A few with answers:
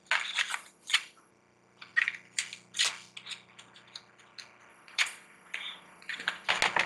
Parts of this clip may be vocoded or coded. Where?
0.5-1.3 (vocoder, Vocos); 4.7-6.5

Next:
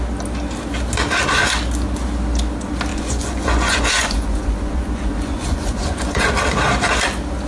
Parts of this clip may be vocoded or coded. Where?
2.9-6.3 (vocoder, Vocos)

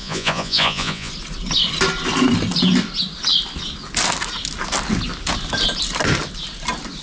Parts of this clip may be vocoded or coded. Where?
0.0-1.1 (vocoder, Vocos)

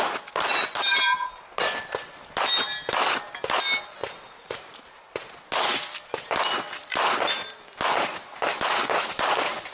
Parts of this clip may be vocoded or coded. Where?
4.0-4.6 (vocoder, Vocos)